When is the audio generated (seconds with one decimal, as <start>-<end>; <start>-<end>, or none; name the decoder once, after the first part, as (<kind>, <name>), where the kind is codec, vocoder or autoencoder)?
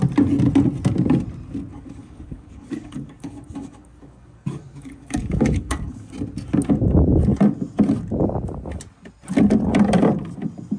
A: 1.7-6.1 (codec, DAC)